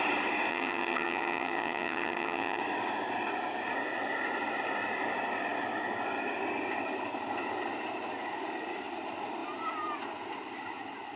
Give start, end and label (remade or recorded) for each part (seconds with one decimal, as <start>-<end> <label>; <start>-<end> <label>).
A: 0.0-0.5 recorded; 0.5-2.6 remade; 2.6-11.2 recorded